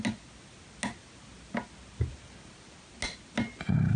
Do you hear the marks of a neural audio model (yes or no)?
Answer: no